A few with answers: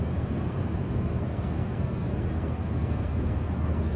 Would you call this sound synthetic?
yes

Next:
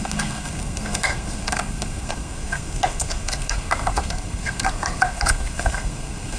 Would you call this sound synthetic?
yes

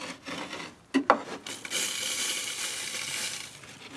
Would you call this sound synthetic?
no